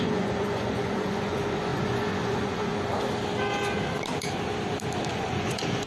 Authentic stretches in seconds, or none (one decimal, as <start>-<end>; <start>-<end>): 2.7-5.1